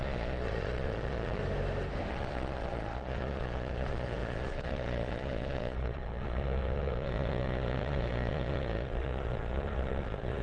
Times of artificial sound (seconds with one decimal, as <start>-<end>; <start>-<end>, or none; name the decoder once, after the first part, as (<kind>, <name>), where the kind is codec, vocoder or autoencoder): 0.0-1.4 (vocoder, Vocos); 2.1-10.4